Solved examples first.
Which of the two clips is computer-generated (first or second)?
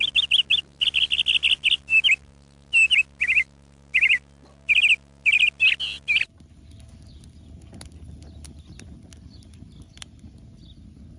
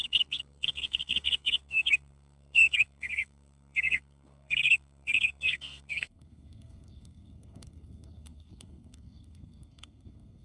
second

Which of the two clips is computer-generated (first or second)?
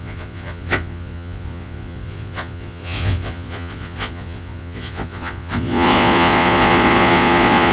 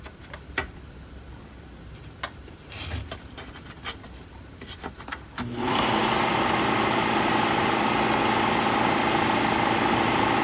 first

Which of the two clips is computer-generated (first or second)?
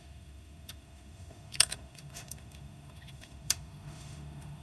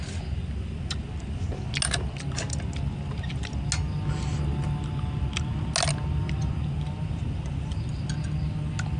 first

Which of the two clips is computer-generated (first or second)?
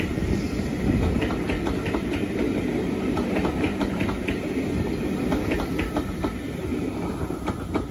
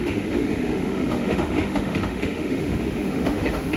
second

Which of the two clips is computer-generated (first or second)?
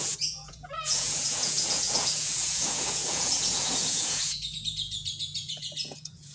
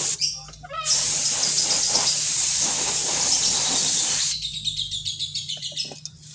first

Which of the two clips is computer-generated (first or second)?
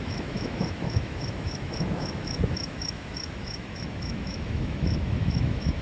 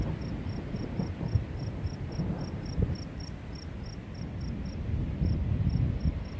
first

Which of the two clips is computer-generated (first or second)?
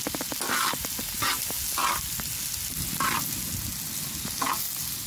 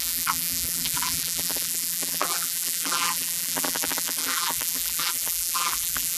second